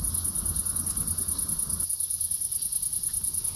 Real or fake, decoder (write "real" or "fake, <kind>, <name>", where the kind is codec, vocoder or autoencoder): real